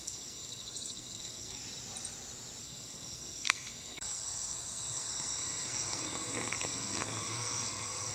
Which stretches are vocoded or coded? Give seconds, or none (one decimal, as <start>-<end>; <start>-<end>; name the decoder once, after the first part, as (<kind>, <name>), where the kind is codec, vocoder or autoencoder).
0.0-1.6 (codec, SNAC); 2.6-8.1